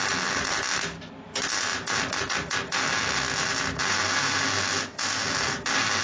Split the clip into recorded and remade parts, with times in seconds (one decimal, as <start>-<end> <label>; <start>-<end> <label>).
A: 0.0-6.0 recorded